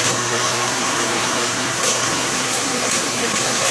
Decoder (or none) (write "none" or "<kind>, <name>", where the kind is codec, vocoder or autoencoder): codec, SNAC